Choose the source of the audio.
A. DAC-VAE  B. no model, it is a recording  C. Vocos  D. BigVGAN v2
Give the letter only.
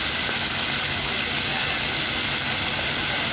B